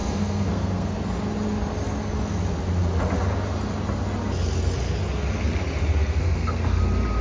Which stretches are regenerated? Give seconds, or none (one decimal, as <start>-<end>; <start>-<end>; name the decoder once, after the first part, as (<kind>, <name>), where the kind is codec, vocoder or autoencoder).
0.0-1.0 (codec, SNAC); 5.9-6.8

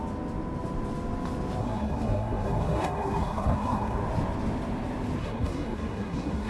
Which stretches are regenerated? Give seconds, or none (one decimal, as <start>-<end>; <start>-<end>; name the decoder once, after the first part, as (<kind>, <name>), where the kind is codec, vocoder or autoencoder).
1.6-4.0 (codec, SNAC); 5.2-6.5